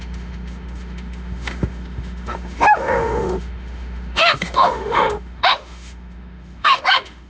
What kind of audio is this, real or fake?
fake